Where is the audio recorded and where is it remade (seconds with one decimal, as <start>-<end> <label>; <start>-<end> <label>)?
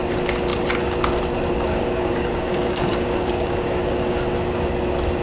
0.0-1.7 recorded; 1.7-4.2 remade; 4.2-5.2 recorded